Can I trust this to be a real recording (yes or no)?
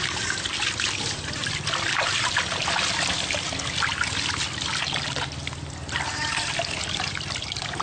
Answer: yes